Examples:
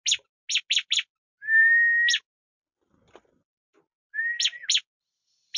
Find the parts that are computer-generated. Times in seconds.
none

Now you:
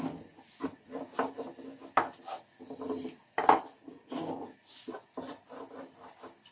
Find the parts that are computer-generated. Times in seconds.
none

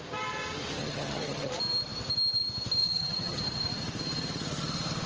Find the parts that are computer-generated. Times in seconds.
0.8-1.5 (vocoder, HiFi-GAN); 2.8-3.4

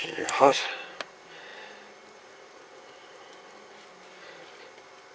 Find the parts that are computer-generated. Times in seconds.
0.0-0.7 (codec, SNAC)

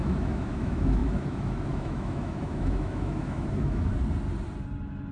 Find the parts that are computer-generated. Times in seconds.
0.0-3.9 (autoencoder, DAC-VAE)

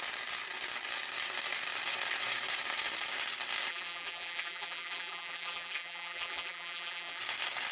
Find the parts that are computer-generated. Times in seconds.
3.7-7.2 (vocoder, BigVGAN v2)

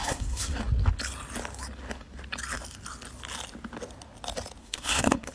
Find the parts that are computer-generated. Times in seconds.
0.0-0.6 (codec, SNAC); 4.6-5.3